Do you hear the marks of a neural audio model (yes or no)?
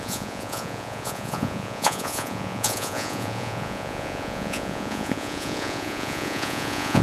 yes